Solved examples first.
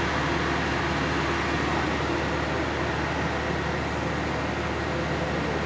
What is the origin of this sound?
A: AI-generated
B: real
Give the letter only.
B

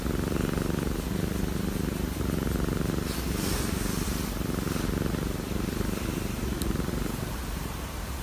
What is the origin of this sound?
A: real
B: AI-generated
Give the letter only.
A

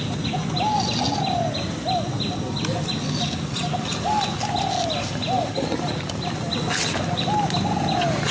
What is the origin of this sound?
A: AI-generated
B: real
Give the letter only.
B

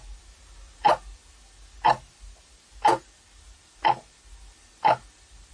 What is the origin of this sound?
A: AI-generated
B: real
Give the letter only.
B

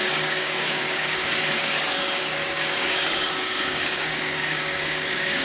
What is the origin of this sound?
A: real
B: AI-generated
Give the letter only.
B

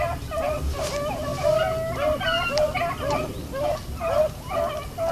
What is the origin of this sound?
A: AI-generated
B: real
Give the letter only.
B